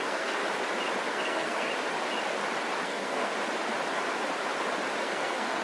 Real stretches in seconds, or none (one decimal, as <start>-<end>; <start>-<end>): 0.4-1.1; 1.7-2.8; 3.3-5.0